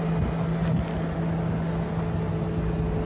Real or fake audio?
real